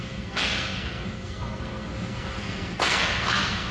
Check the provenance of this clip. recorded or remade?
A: remade